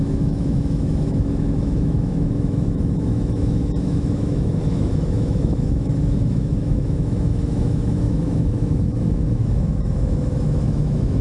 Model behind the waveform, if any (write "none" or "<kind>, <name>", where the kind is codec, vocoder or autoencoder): autoencoder, DAC-VAE